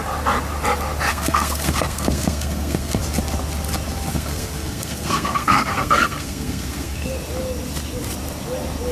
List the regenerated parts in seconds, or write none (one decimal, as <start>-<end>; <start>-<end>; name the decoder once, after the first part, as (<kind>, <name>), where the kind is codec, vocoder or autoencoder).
1.1-3.0 (codec, SNAC); 4.1-7.1